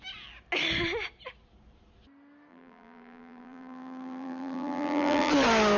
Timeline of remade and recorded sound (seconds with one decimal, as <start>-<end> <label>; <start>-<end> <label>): 0.0-2.5 recorded; 2.5-5.3 remade; 5.3-5.8 recorded